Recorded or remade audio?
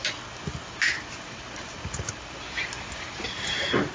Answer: recorded